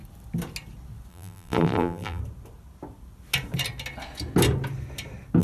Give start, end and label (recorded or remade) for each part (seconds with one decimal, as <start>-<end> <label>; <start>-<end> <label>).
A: 0.0-1.1 recorded; 1.1-2.2 remade; 2.2-5.4 recorded

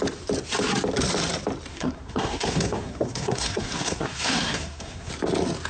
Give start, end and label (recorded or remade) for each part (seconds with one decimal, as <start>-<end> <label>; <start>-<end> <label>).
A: 0.0-1.7 recorded; 1.7-5.1 remade; 5.1-5.7 recorded

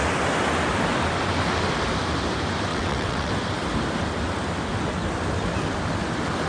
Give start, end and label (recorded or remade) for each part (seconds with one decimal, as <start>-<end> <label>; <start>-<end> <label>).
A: 0.0-2.7 recorded; 2.7-3.3 remade; 3.3-6.5 recorded

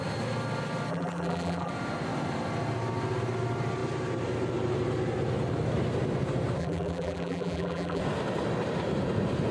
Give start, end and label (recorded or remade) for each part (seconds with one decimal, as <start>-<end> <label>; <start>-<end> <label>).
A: 0.0-0.9 recorded; 0.9-1.7 remade; 1.7-6.6 recorded; 6.6-8.0 remade; 8.0-9.5 recorded

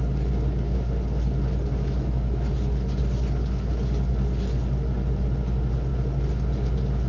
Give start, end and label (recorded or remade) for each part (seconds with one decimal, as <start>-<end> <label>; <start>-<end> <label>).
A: 0.0-7.1 recorded

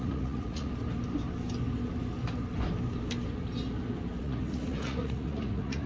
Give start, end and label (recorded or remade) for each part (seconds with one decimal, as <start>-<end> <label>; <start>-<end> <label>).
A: 0.0-0.7 remade; 0.7-4.2 recorded; 4.2-5.9 remade